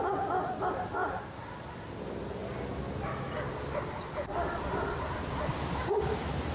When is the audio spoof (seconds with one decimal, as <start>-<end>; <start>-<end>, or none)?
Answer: 1.0-1.5